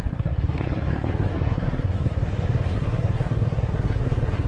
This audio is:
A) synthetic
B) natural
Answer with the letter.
A